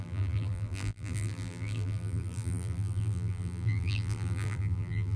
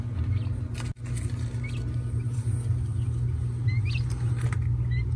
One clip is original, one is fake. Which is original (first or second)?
second